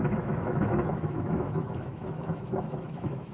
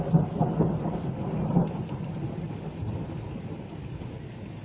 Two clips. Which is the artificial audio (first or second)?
first